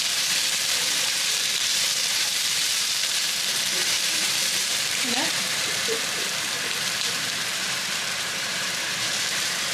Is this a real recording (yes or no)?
no